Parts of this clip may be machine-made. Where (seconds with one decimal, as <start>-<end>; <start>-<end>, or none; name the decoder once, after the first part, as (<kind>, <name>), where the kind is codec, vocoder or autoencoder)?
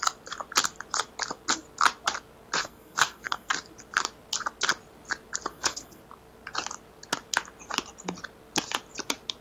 2.6-3.5 (codec, SNAC); 5.5-6.0